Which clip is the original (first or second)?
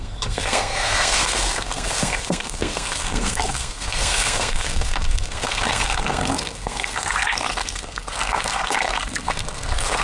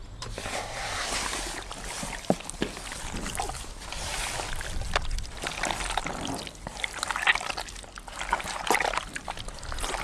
second